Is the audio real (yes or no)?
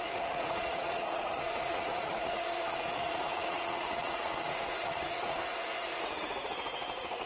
no